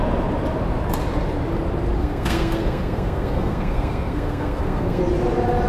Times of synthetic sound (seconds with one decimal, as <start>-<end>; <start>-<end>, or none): 2.0-5.0